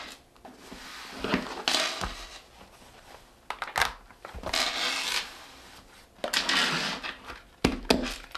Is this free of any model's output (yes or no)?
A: yes